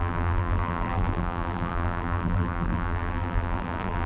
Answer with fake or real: fake